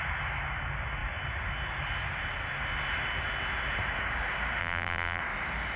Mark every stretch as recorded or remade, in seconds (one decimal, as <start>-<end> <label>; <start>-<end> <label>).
0.0-4.6 recorded; 4.6-5.2 remade; 5.2-5.8 recorded